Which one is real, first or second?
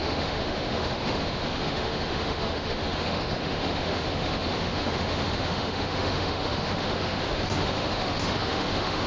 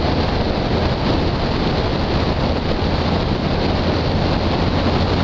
second